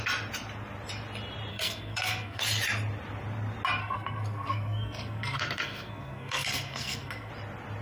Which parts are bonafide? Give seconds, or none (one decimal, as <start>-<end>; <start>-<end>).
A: 0.0-1.5; 2.4-3.8; 7.3-7.8